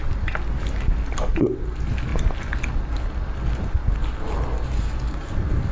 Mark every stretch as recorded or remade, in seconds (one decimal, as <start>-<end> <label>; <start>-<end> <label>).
0.0-5.7 recorded